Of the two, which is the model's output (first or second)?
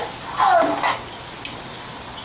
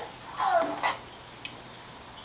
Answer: first